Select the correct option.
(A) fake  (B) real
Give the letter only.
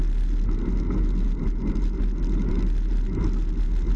B